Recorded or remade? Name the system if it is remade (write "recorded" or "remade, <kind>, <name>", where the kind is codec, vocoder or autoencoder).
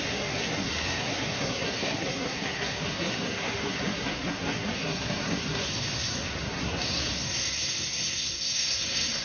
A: remade, codec, SNAC